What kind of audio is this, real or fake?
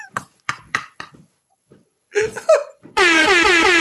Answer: fake